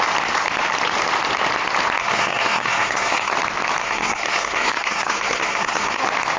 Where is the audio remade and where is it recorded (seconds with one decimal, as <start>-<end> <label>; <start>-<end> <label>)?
0.0-2.0 recorded; 2.0-3.3 remade; 3.3-3.8 recorded; 3.8-6.0 remade; 6.0-6.4 recorded